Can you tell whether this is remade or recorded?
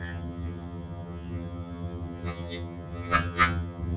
remade